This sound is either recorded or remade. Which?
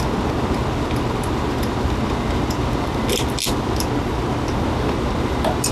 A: recorded